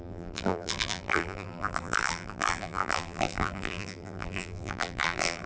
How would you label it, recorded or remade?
remade